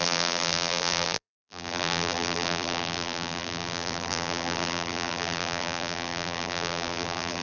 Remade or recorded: remade